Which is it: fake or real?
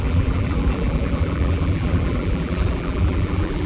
fake